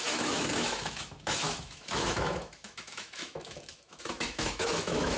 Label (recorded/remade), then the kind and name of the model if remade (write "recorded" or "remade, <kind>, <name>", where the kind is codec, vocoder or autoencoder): remade, autoencoder, DAC-VAE